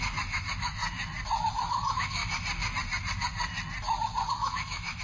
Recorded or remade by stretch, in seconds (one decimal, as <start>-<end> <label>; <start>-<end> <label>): 0.0-0.8 remade; 0.8-1.5 recorded; 1.5-2.2 remade; 2.2-4.3 recorded; 4.3-5.0 remade